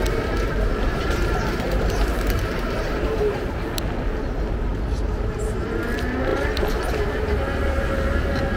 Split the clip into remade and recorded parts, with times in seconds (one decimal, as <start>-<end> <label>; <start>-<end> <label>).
0.0-0.9 recorded; 0.9-3.7 remade; 3.7-8.6 recorded

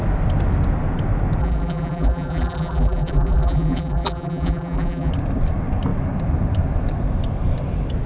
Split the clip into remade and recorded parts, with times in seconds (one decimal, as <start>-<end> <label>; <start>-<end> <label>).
0.0-1.4 recorded; 1.4-5.1 remade; 5.1-8.1 recorded

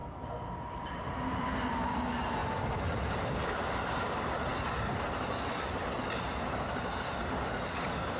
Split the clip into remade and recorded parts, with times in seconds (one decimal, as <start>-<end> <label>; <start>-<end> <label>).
0.0-1.1 remade; 1.1-8.2 recorded

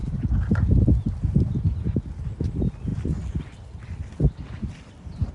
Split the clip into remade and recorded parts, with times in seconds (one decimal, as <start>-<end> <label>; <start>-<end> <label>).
0.0-2.9 recorded; 2.9-4.1 remade; 4.1-5.3 recorded

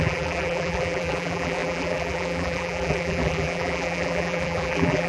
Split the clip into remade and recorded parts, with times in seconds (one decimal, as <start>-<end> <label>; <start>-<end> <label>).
0.0-5.1 remade

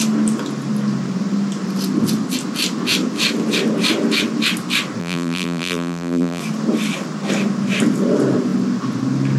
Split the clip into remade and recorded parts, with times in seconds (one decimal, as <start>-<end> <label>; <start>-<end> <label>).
0.0-5.0 recorded; 5.0-6.4 remade; 6.4-9.4 recorded